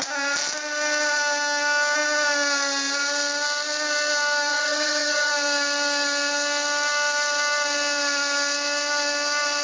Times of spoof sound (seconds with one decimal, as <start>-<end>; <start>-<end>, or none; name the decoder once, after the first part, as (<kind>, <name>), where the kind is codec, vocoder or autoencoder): 4.5-5.3 (vocoder, HiFi-GAN)